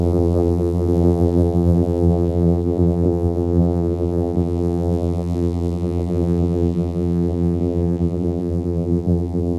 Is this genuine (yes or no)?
no